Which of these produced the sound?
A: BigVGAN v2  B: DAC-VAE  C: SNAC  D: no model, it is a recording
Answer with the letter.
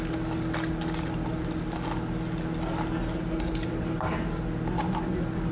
D